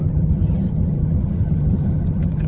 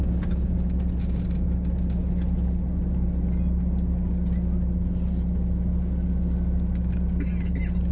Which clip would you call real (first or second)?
second